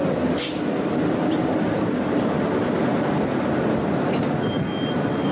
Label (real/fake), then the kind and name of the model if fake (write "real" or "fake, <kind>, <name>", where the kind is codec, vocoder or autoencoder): real